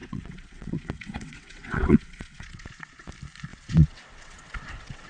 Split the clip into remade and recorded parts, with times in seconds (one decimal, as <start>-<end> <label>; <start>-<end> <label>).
0.0-3.1 remade; 3.1-3.5 recorded; 3.5-5.1 remade